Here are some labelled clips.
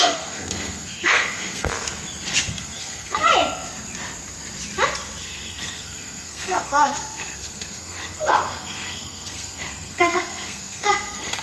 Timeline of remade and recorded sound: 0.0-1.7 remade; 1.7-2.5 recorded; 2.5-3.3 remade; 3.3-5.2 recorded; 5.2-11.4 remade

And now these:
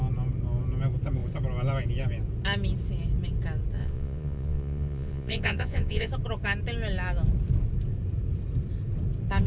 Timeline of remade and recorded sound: 0.0-3.8 recorded; 3.8-6.1 remade; 6.1-9.5 recorded

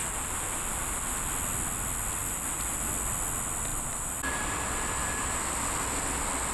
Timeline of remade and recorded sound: 0.0-1.3 remade; 1.3-2.2 recorded; 2.2-2.9 remade; 2.9-3.7 recorded; 3.7-5.7 remade; 5.7-6.5 recorded

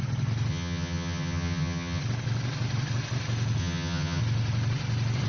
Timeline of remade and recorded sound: 0.0-0.5 recorded; 0.5-2.0 remade; 2.0-3.6 recorded; 3.6-4.2 remade; 4.2-5.3 recorded